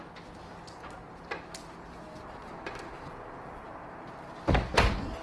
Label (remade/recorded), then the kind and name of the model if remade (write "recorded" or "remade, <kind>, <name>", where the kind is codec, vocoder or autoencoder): recorded